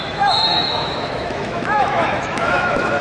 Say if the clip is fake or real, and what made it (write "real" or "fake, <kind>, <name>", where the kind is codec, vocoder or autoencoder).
fake, autoencoder, DAC-VAE